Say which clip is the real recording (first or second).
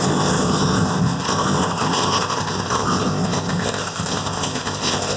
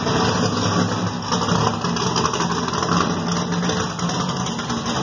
second